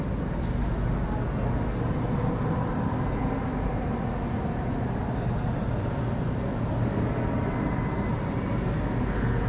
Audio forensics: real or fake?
real